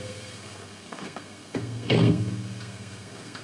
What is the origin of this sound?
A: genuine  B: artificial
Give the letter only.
B